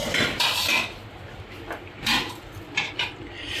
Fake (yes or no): yes